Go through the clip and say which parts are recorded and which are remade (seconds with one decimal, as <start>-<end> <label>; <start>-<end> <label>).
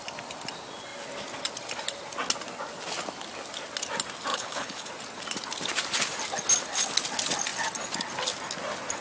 0.0-4.3 recorded; 4.3-4.9 remade; 4.9-9.0 recorded